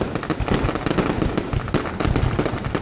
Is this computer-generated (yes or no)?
no